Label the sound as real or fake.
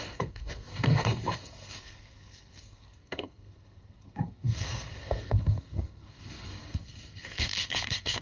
fake